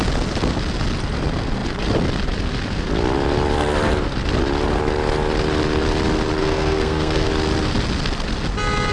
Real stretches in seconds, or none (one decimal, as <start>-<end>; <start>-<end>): 0.0-6.4; 7.3-8.9